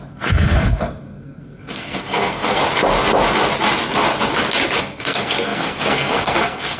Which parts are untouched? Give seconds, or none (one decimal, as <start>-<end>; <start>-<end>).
2.6-4.8